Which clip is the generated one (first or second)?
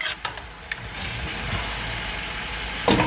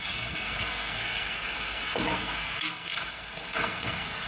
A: second